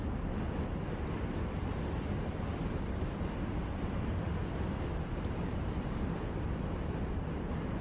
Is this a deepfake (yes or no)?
no